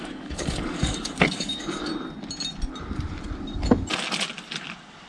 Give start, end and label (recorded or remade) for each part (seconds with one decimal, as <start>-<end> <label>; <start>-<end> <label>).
0.0-1.9 remade; 1.9-5.1 recorded